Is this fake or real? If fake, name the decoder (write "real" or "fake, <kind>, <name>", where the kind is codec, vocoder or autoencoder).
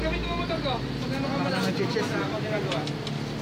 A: real